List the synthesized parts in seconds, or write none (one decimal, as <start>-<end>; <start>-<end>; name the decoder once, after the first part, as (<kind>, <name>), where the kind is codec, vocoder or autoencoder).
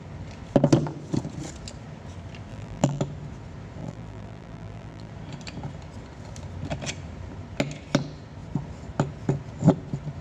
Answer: 2.5-3.0 (vocoder, BigVGAN v2); 3.8-5.1